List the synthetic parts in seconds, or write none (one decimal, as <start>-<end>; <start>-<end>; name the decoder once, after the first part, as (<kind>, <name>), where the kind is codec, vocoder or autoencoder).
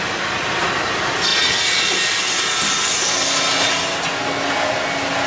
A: none